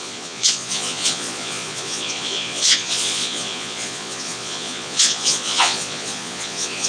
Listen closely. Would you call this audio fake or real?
fake